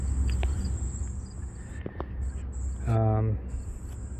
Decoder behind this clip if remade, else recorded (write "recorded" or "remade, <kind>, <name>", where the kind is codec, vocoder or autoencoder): recorded